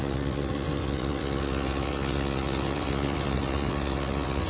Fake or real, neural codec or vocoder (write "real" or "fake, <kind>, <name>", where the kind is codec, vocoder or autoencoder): fake, vocoder, WaveNeXt